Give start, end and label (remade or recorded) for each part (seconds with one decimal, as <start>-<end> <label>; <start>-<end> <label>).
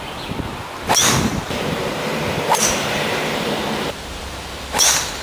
0.0-1.3 recorded; 1.3-4.4 remade; 4.4-5.2 recorded